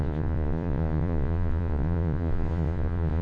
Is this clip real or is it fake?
fake